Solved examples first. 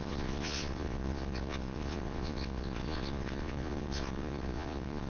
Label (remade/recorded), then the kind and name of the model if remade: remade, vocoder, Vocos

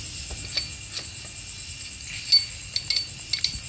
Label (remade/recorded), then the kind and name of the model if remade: recorded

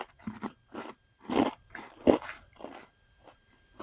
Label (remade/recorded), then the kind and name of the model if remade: remade, vocoder, BigVGAN v2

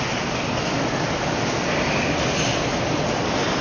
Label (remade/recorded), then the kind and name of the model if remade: recorded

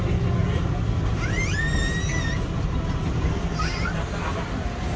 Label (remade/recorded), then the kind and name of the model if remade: recorded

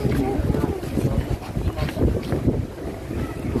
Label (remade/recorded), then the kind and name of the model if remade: recorded